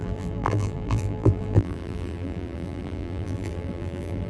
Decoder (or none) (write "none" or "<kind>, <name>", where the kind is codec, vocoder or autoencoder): vocoder, BigVGAN v2